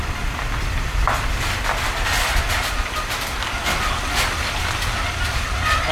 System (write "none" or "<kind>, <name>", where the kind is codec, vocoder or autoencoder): none